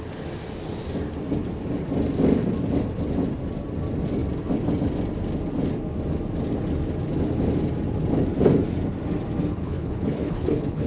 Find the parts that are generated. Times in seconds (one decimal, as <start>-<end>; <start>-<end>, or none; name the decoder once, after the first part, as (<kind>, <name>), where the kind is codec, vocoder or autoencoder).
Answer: 9.6-10.9 (codec, HILCodec)